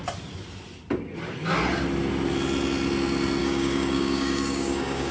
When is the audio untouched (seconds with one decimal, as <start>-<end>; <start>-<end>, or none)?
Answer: 0.0-3.4